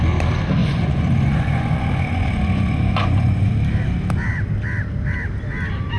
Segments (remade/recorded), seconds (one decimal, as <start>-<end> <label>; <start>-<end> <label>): 0.0-0.6 recorded; 0.6-3.5 remade; 3.5-6.0 recorded

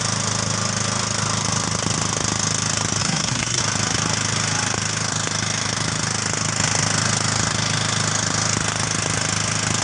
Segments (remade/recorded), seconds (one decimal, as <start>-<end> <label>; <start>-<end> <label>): 0.0-3.0 recorded; 3.0-3.6 remade; 3.6-9.8 recorded

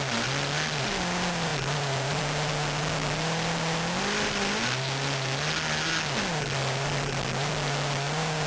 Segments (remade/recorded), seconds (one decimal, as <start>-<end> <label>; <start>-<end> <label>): 0.0-8.5 recorded